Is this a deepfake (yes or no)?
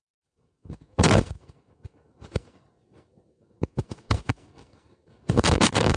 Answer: yes